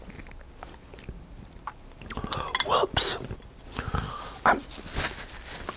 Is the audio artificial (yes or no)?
no